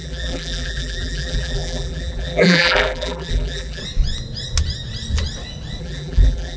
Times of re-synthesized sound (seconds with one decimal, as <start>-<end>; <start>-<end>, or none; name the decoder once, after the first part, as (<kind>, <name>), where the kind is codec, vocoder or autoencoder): 0.0-3.8 (vocoder, BigVGAN v2); 5.8-6.6